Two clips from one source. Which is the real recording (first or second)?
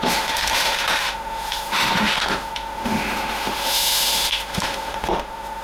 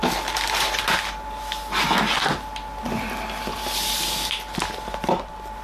second